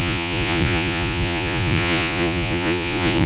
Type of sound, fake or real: fake